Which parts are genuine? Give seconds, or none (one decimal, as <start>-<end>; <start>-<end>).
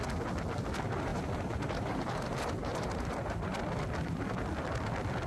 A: 0.0-1.1; 3.1-5.3